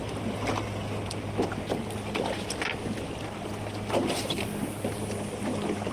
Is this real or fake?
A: real